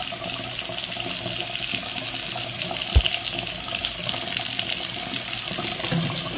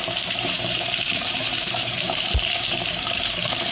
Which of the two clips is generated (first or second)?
second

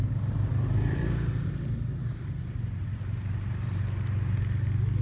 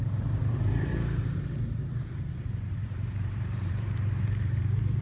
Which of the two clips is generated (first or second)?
second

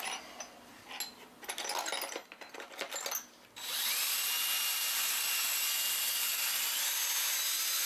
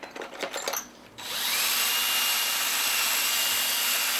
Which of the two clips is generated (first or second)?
second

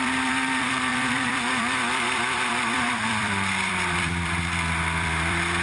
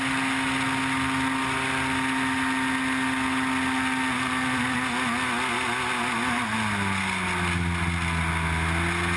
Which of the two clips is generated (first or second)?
first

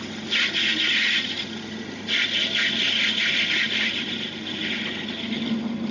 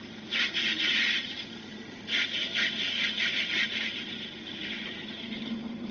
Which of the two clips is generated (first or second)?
second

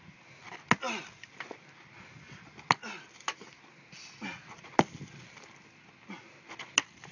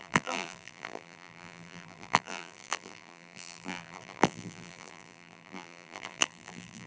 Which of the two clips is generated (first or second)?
second